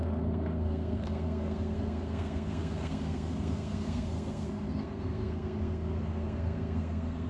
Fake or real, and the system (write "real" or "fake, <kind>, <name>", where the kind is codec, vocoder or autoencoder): fake, codec, SNAC